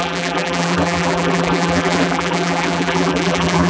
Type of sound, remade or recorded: remade